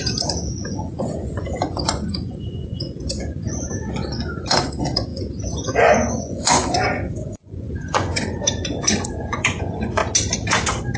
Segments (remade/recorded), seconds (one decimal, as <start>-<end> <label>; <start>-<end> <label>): 0.0-10.0 remade; 10.0-11.0 recorded